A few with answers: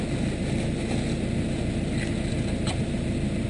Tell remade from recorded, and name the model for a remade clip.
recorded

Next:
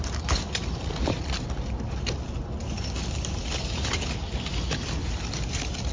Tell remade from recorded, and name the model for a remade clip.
recorded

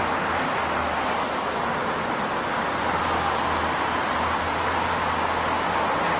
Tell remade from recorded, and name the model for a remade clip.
recorded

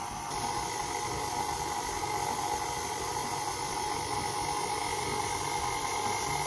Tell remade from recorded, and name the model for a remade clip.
recorded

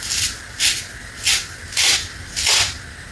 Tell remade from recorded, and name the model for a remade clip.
recorded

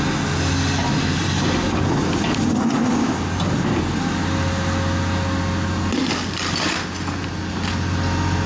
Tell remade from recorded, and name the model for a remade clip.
recorded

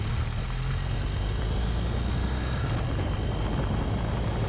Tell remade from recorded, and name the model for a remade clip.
recorded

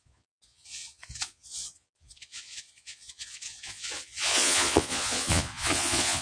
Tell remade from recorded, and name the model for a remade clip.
remade, vocoder, Vocos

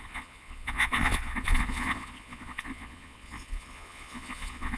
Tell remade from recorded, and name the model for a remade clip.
remade, vocoder, Vocos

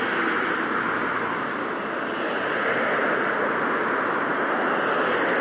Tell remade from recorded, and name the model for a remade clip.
recorded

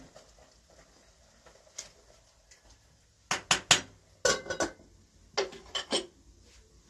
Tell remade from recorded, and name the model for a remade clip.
recorded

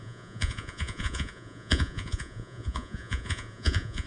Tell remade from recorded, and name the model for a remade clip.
remade, vocoder, Vocos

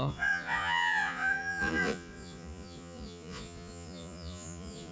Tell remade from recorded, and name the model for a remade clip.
remade, vocoder, Vocos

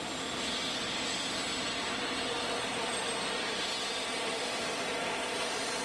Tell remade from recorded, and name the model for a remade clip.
recorded